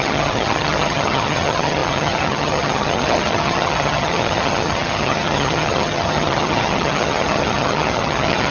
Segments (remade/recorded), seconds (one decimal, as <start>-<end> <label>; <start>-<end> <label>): 0.0-8.5 remade

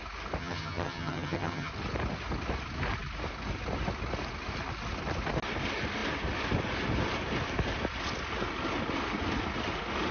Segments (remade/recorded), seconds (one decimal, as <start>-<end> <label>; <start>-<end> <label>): 0.0-0.4 recorded; 0.4-1.7 remade; 1.7-10.1 recorded

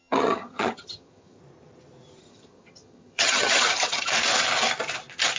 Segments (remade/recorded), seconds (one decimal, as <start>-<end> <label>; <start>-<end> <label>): 0.0-1.4 remade; 1.4-2.2 recorded; 2.2-4.1 remade; 4.1-5.4 recorded

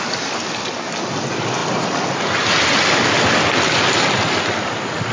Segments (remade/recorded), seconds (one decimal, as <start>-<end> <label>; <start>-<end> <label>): 0.0-5.1 recorded

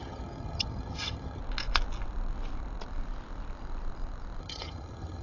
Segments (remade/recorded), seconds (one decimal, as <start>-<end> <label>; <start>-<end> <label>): 0.0-1.4 remade; 1.4-4.4 recorded; 4.4-5.2 remade

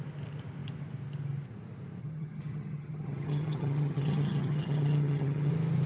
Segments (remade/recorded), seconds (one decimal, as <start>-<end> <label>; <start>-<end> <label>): 0.0-2.0 recorded; 2.0-5.5 remade; 5.5-5.9 recorded

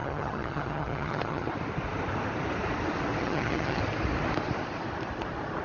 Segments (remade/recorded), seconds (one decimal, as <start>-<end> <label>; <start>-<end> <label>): 0.0-1.5 remade; 1.5-3.2 recorded; 3.2-3.8 remade; 3.8-5.6 recorded

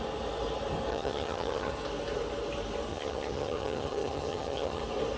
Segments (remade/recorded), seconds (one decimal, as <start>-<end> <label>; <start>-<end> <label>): 0.0-0.9 recorded; 0.9-1.7 remade; 1.7-2.9 recorded; 2.9-4.8 remade; 4.8-5.2 recorded